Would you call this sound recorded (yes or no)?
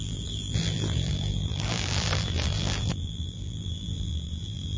no